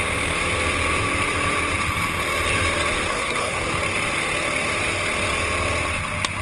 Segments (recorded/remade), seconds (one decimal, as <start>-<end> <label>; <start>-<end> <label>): 0.0-3.1 recorded; 3.1-3.6 remade; 3.6-6.4 recorded